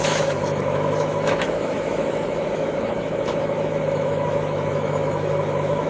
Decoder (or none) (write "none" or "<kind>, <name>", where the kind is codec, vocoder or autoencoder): autoencoder, DAC-VAE